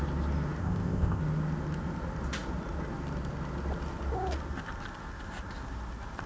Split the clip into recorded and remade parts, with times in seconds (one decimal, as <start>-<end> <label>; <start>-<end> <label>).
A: 0.0-0.6 recorded; 0.6-1.2 remade; 1.2-6.3 recorded